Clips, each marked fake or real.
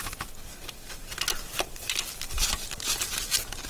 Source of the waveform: real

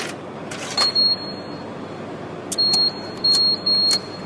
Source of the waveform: real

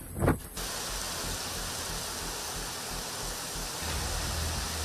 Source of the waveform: real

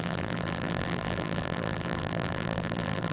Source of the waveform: fake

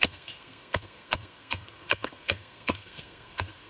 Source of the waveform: fake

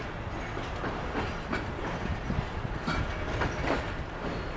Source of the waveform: real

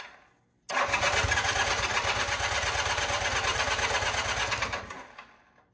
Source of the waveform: real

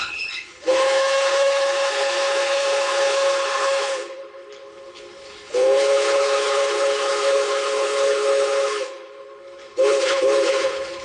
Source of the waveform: fake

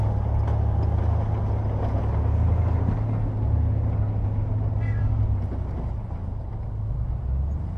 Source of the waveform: real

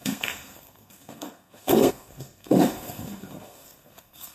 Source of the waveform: fake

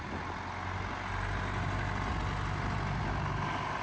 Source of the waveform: real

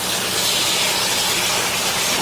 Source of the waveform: real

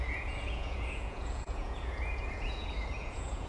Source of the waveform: fake